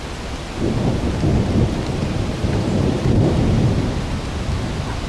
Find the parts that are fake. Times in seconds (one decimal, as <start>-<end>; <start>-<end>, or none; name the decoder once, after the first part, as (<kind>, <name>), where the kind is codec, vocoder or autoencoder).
2.3-3.6 (vocoder, BigVGAN v2)